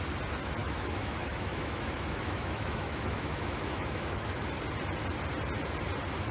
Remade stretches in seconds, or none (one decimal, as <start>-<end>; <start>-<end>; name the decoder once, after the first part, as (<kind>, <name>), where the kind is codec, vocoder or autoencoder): 0.6-4.4 (autoencoder, DAC-VAE)

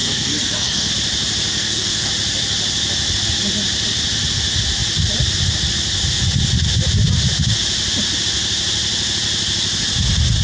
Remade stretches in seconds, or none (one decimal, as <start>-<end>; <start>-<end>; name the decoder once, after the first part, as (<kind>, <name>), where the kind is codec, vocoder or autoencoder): 0.0-0.9 (codec, SNAC); 1.5-2.1

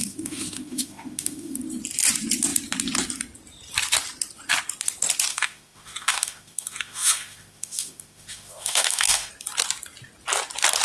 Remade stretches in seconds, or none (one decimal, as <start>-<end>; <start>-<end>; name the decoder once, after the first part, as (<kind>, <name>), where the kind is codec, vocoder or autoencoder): 0.0-1.6 (autoencoder, DAC-VAE); 5.3-9.3

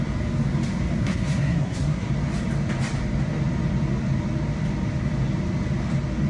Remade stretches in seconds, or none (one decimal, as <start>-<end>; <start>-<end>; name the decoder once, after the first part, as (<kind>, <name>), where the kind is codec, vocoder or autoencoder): 1.0-2.1 (codec, SNAC)

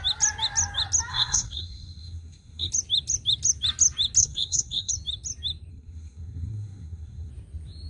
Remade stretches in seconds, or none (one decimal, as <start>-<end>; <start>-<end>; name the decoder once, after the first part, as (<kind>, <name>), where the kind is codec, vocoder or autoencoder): 1.1-2.7 (codec, SNAC); 4.2-4.9; 5.7-7.3

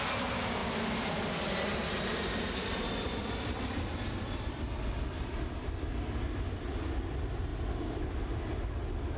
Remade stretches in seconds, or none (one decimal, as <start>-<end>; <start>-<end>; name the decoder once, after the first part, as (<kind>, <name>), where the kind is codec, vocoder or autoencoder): 0.6-5.7 (vocoder, BigVGAN v2); 7.5-8.2

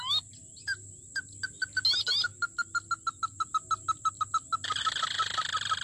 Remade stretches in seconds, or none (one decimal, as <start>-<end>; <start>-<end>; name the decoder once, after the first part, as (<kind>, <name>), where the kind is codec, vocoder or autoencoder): none